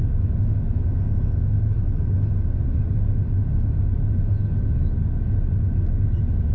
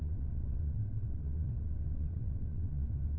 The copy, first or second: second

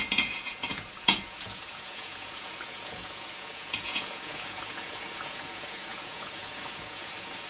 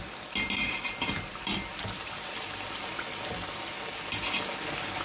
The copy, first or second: first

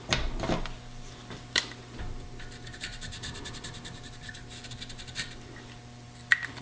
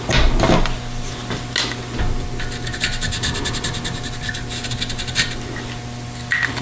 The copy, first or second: first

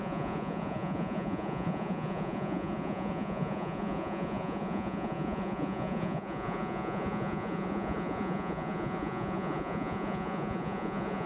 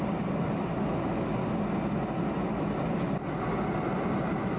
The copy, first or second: first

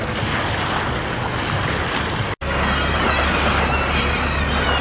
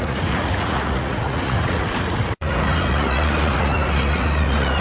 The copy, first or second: second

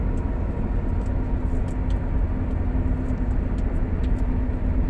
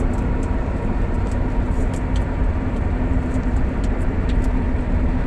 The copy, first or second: second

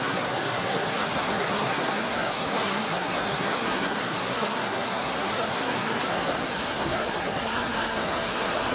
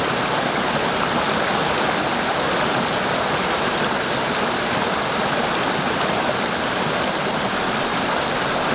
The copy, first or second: first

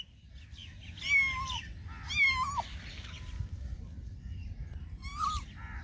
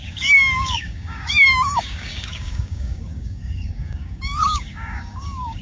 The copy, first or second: second